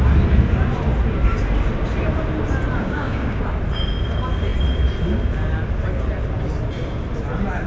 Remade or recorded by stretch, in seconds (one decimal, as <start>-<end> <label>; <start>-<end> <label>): 0.0-2.8 recorded; 2.8-3.4 remade; 3.4-7.7 recorded